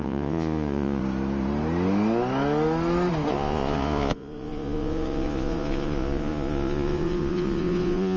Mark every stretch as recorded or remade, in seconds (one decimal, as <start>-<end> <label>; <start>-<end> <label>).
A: 0.0-1.0 remade; 1.0-3.3 recorded; 3.3-8.2 remade